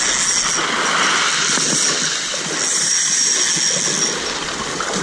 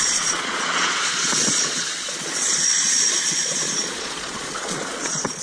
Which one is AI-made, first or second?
second